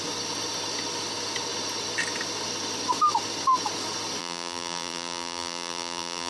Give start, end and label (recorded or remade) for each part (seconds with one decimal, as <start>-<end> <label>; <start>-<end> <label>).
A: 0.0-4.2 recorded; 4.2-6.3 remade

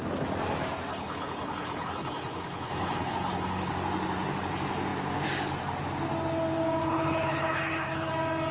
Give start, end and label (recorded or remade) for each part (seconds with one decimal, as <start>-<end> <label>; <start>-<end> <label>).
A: 0.0-0.9 recorded; 0.9-3.7 remade; 3.7-6.8 recorded; 6.8-8.1 remade; 8.1-8.5 recorded

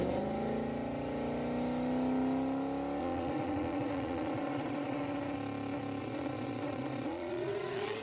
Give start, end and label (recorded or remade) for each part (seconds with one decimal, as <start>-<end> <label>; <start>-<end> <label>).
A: 0.0-3.0 recorded; 3.0-5.0 remade; 5.0-6.0 recorded; 6.0-8.0 remade